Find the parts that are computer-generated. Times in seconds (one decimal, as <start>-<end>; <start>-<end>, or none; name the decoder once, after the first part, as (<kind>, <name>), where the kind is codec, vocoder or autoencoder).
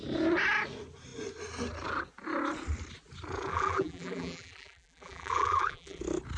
3.5-6.0 (vocoder, BigVGAN v2)